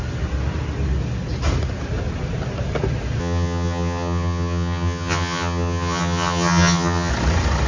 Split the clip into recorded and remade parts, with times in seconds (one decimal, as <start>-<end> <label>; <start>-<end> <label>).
0.0-3.2 recorded; 3.2-7.1 remade; 7.1-7.7 recorded